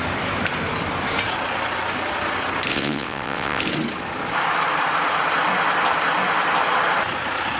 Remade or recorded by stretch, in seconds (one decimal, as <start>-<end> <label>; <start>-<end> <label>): 0.0-2.7 recorded; 2.7-3.6 remade; 3.6-7.6 recorded